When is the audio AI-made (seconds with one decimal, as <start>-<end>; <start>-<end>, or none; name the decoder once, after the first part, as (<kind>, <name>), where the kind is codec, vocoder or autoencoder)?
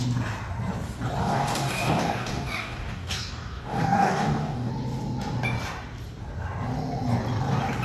1.2-4.7 (codec, DAC)